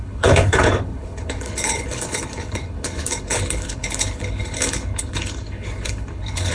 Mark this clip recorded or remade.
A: remade